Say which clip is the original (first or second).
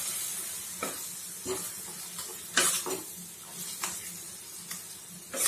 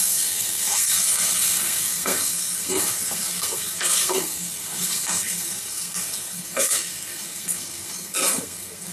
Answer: first